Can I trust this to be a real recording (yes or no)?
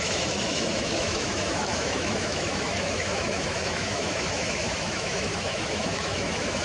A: no